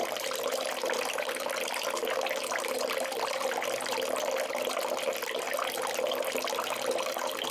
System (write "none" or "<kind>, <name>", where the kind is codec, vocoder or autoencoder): none